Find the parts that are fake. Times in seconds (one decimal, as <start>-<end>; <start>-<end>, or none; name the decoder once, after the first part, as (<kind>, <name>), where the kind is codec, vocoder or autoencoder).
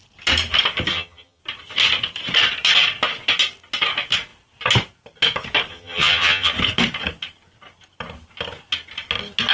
0.9-1.4 (vocoder, HiFi-GAN); 5.7-6.5